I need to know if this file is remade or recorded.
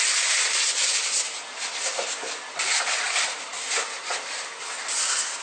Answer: recorded